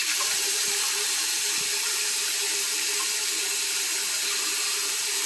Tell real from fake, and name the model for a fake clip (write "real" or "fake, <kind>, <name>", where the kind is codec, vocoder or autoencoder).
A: fake, vocoder, BigVGAN v2